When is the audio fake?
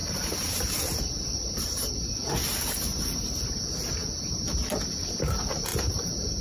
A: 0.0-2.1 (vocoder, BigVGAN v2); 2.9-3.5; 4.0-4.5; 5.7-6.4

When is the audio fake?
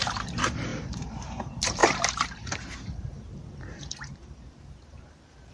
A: 0.0-5.5 (vocoder, BigVGAN v2)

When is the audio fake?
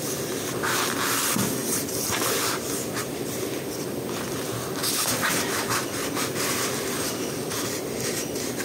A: 1.6-4.0 (vocoder, BigVGAN v2); 4.8-8.6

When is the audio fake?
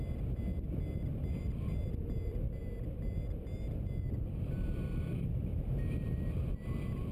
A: 5.5-6.4 (vocoder, BigVGAN v2)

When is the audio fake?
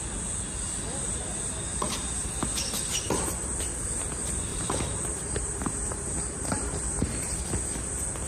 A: 1.7-2.3 (vocoder, BigVGAN v2); 4.5-7.5